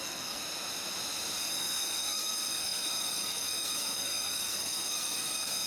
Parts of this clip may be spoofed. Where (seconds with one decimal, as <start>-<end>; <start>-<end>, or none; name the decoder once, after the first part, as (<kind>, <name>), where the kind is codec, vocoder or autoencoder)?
0.0-0.4 (codec, SNAC); 1.4-5.7